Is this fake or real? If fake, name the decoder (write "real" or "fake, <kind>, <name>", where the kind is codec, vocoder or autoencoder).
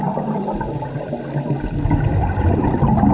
real